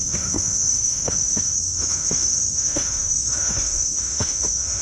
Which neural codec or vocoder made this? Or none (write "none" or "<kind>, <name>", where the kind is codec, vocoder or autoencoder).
autoencoder, DAC-VAE